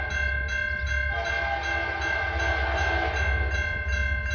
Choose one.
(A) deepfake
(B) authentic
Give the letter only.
B